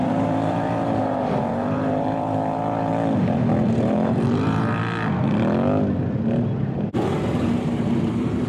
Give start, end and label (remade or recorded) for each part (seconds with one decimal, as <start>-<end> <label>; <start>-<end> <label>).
0.0-2.9 remade; 2.9-3.7 recorded; 3.7-4.8 remade; 4.8-7.3 recorded; 7.3-8.5 remade